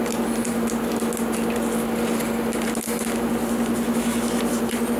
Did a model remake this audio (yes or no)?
no